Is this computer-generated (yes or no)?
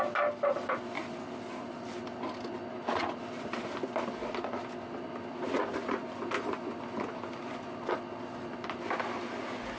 no